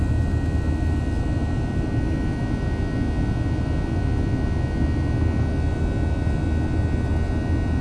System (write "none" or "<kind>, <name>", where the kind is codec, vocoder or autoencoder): none